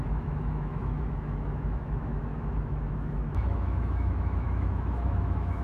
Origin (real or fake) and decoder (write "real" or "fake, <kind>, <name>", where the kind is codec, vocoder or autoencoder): fake, autoencoder, DAC-VAE